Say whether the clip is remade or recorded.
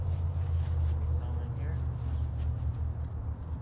recorded